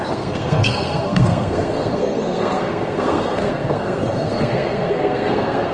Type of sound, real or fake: fake